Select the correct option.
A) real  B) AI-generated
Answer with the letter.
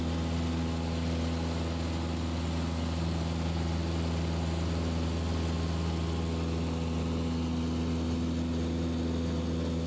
A